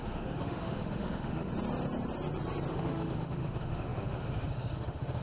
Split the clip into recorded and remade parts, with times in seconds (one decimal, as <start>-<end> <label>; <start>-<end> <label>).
0.0-1.5 remade; 1.5-2.7 recorded; 2.7-5.2 remade